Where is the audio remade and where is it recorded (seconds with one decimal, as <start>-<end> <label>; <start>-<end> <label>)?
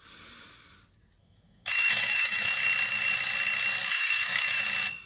0.0-1.2 recorded; 1.2-2.5 remade; 2.5-3.9 recorded; 3.9-4.6 remade; 4.6-5.1 recorded